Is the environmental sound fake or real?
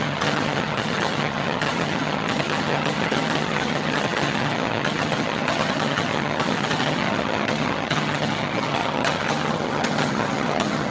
fake